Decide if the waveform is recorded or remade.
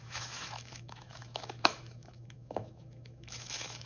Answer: remade